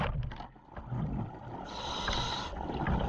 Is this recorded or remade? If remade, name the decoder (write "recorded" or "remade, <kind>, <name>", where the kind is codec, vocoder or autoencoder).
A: recorded